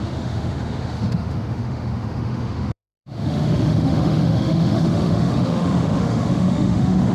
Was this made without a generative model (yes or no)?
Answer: no